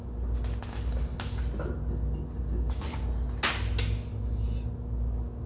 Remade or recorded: recorded